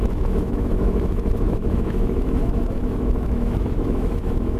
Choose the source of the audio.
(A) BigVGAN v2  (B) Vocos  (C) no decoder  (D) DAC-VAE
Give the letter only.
D